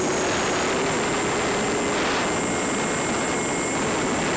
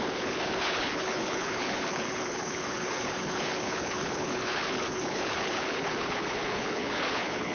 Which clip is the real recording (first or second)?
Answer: first